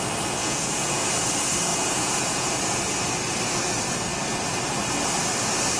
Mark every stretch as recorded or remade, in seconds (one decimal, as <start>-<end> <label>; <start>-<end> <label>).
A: 0.0-0.4 recorded; 0.4-1.1 remade; 1.1-1.7 recorded; 1.7-2.6 remade; 2.6-5.8 recorded

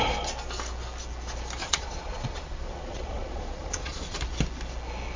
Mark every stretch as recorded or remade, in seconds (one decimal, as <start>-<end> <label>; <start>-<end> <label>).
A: 0.0-1.6 recorded; 1.6-4.2 remade; 4.2-5.2 recorded

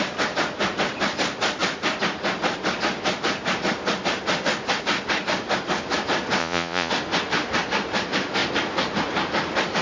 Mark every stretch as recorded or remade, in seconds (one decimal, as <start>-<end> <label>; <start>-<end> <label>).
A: 0.0-6.4 recorded; 6.4-6.9 remade; 6.9-9.8 recorded

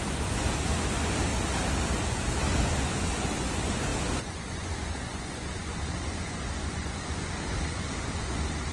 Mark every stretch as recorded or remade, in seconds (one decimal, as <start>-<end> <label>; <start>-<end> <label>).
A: 0.0-1.3 remade; 1.3-2.1 recorded; 2.1-8.7 remade

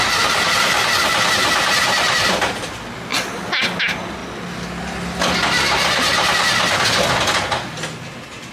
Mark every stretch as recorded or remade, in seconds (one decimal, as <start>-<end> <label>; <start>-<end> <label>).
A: 0.0-8.5 recorded

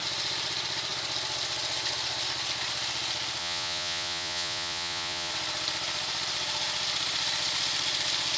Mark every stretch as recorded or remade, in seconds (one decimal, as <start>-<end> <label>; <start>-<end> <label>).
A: 0.0-3.4 recorded; 3.4-5.3 remade; 5.3-8.4 recorded

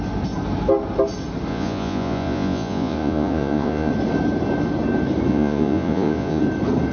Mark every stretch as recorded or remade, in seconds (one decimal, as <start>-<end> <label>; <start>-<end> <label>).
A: 0.0-1.5 recorded; 1.5-3.9 remade; 3.9-5.3 recorded; 5.3-6.4 remade; 6.4-6.9 recorded